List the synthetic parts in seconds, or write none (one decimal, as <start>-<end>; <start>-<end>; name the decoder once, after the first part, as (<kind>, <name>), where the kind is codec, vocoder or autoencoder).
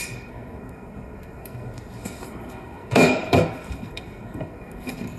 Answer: 0.0-5.2 (codec, SNAC)